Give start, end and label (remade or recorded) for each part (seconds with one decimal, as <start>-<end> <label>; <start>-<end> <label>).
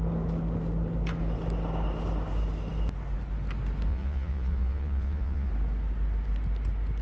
0.0-3.9 recorded; 3.9-5.5 remade; 5.5-7.0 recorded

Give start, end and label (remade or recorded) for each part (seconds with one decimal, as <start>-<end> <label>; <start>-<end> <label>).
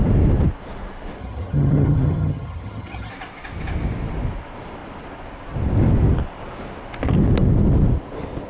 0.0-1.2 recorded; 1.2-3.1 remade; 3.1-8.5 recorded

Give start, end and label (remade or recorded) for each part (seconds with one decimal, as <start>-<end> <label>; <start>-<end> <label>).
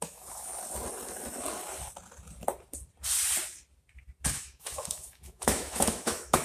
0.0-0.5 remade; 0.5-4.3 recorded; 4.3-6.4 remade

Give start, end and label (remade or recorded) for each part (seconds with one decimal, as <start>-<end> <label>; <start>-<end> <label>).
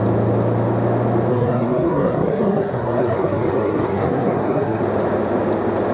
0.0-1.3 recorded; 1.3-4.8 remade; 4.8-5.9 recorded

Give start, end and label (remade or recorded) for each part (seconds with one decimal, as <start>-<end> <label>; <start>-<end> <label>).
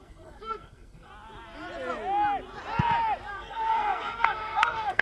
0.0-1.1 remade; 1.1-3.3 recorded; 3.3-5.0 remade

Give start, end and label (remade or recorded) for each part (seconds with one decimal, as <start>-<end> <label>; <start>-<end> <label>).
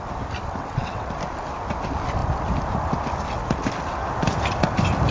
0.0-0.6 recorded; 0.6-1.1 remade; 1.1-5.1 recorded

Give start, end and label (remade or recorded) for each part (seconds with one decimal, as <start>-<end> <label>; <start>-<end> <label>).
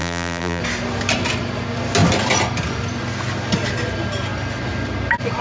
0.0-0.6 remade; 0.6-5.4 recorded